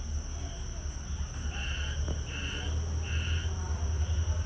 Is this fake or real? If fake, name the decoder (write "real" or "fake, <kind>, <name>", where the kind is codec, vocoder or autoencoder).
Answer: real